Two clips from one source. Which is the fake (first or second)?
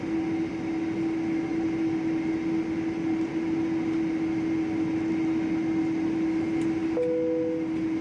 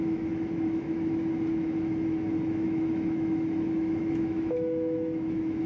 second